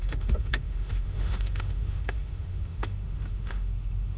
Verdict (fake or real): fake